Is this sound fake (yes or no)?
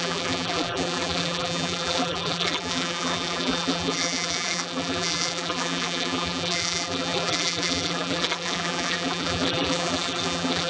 yes